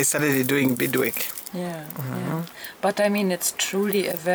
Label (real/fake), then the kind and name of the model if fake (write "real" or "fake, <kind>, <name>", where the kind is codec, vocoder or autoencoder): fake, vocoder, BigVGAN v2